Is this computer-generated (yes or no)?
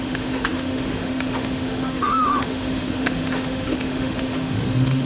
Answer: yes